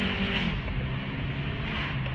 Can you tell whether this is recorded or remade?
recorded